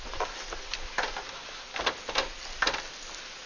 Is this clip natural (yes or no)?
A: yes